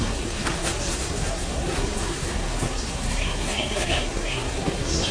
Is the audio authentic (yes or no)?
no